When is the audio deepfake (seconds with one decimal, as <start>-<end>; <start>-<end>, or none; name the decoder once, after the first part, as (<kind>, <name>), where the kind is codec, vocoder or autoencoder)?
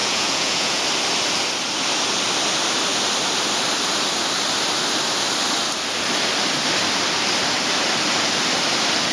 0.0-0.8 (vocoder, Vocos)